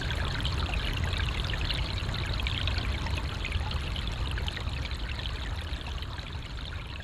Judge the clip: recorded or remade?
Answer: recorded